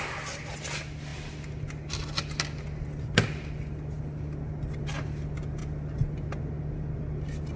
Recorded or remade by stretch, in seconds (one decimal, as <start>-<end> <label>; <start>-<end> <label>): 0.0-7.6 recorded